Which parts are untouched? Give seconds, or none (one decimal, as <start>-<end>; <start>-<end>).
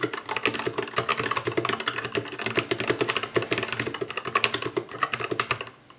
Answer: 0.0-6.0